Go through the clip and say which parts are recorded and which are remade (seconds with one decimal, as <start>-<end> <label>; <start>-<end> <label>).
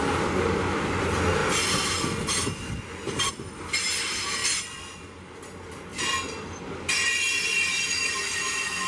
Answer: 0.0-8.9 recorded